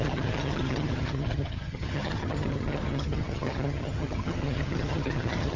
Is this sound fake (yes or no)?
yes